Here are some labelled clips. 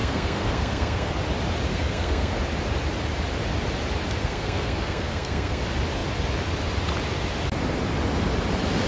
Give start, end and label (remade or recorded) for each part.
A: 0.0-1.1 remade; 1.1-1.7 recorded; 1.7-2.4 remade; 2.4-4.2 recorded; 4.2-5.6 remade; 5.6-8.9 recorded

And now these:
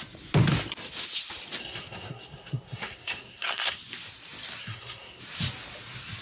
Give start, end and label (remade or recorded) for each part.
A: 0.0-1.6 recorded; 1.6-3.8 remade; 3.8-4.6 recorded; 4.6-5.2 remade; 5.2-6.2 recorded

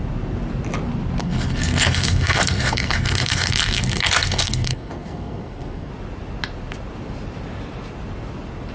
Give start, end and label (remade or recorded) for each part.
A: 0.0-1.2 recorded; 1.2-5.9 remade; 5.9-8.7 recorded

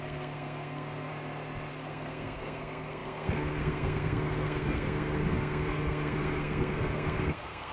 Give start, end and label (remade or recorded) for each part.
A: 0.0-1.1 remade; 1.1-1.7 recorded; 1.7-7.7 remade

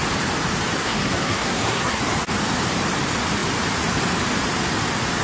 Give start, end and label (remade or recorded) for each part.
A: 0.0-0.8 recorded; 0.8-2.0 remade; 2.0-5.2 recorded

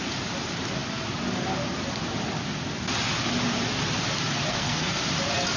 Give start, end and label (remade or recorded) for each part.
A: 0.0-4.5 recorded; 4.5-5.0 remade; 5.0-5.6 recorded

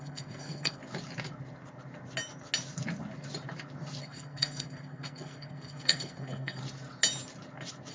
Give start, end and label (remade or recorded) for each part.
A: 0.0-0.8 remade; 0.8-4.0 recorded; 4.0-6.6 remade; 6.6-7.9 recorded